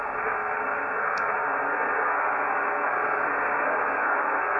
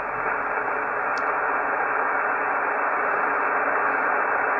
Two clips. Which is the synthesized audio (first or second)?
first